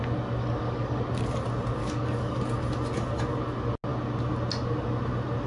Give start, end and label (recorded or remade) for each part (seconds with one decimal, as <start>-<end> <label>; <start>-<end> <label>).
0.0-0.4 recorded; 0.4-1.0 remade; 1.0-1.8 recorded; 1.8-2.4 remade; 2.4-5.5 recorded